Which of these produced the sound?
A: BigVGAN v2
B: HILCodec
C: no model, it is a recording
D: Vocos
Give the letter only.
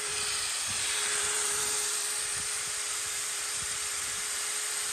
A